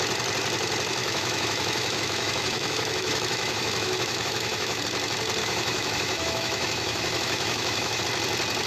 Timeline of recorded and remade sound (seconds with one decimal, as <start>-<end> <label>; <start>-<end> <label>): 0.0-1.0 recorded; 1.0-4.8 remade; 4.8-5.4 recorded; 5.4-8.0 remade; 8.0-8.7 recorded